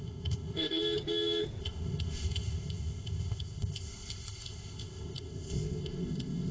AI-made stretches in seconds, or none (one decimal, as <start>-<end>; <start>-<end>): 0.0-0.8; 1.6-6.5